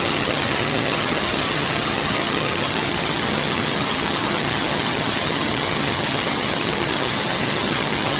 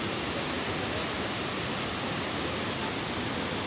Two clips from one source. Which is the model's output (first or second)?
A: first